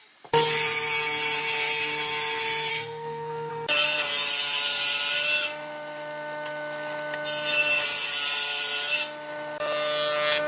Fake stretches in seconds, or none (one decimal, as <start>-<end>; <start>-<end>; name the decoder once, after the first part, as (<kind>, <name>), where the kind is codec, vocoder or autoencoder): 2.7-3.5 (codec, SNAC)